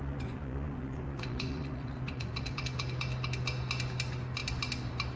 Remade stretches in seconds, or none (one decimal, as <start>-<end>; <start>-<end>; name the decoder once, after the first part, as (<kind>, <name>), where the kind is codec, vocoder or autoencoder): 0.0-2.6 (vocoder, Vocos)